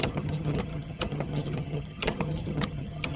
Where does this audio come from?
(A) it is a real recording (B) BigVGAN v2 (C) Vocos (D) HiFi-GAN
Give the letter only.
D